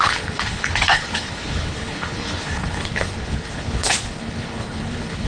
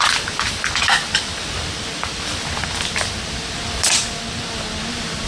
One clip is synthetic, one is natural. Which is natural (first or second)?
second